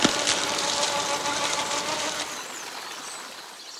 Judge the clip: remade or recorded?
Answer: recorded